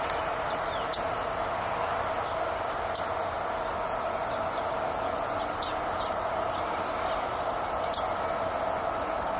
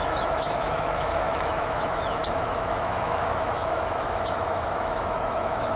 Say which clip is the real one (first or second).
first